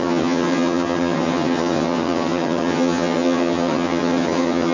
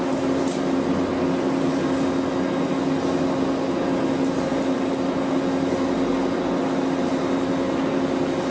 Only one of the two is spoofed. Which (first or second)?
first